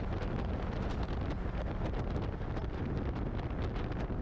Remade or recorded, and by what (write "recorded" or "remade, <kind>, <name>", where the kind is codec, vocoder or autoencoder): recorded